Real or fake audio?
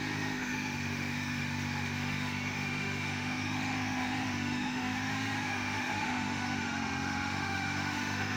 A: fake